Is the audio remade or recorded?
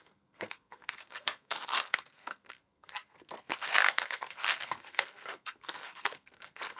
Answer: remade